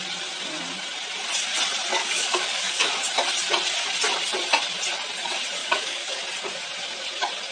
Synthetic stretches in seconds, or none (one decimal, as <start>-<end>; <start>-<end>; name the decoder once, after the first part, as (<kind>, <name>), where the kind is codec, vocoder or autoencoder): 1.9-2.9 (codec, DAC); 5.6-6.2